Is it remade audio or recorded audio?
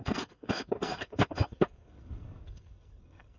remade